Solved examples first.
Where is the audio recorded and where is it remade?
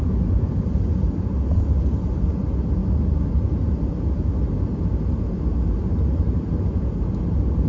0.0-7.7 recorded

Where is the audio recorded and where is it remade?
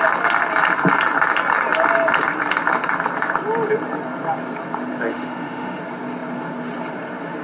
0.0-5.1 recorded; 5.1-5.8 remade; 5.8-7.4 recorded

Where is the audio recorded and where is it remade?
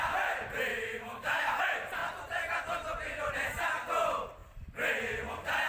0.0-0.7 recorded; 0.7-1.6 remade; 1.6-5.7 recorded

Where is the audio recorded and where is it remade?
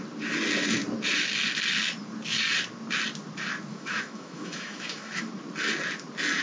0.0-3.7 recorded; 3.7-5.3 remade; 5.3-6.4 recorded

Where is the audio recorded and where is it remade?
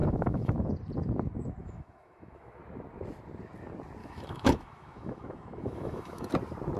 0.0-0.5 remade; 0.5-1.6 recorded; 1.6-2.6 remade; 2.6-4.0 recorded; 4.0-6.3 remade; 6.3-6.8 recorded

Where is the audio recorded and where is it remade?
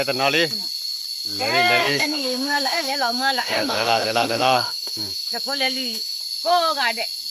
0.0-1.8 recorded; 1.8-6.2 remade; 6.2-7.3 recorded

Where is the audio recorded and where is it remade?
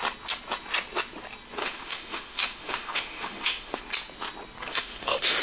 0.0-1.6 recorded; 1.6-3.8 remade; 3.8-4.7 recorded; 4.7-5.4 remade